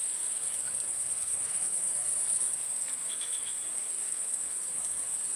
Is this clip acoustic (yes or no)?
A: no